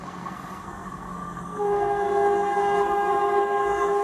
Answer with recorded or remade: remade